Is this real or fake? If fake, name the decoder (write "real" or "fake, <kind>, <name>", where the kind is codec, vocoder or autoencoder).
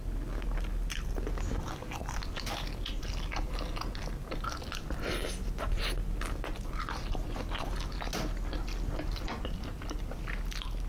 real